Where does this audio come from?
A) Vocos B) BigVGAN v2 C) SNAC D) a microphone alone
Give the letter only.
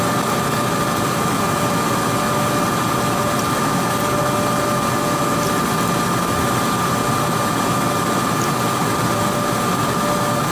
D